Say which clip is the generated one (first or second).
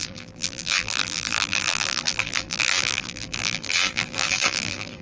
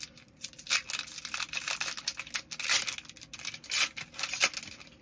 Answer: first